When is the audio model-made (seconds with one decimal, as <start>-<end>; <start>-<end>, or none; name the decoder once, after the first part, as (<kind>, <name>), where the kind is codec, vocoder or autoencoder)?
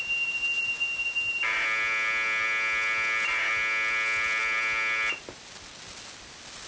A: none